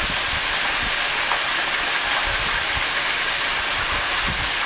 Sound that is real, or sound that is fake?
real